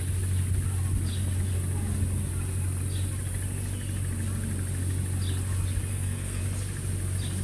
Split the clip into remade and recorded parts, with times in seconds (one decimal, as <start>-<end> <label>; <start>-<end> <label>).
0.0-5.9 recorded; 5.9-6.4 remade; 6.4-7.4 recorded